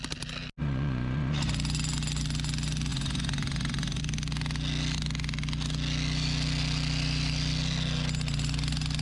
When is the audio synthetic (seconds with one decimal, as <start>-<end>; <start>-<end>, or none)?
0.6-1.5; 2.9-4.0